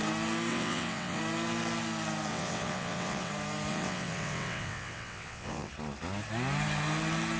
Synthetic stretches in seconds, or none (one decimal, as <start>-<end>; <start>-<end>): 0.5-1.2; 2.3-3.3; 3.7-5.7